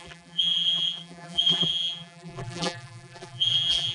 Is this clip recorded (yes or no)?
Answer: no